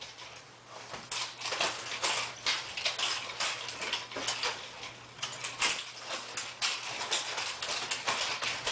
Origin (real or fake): real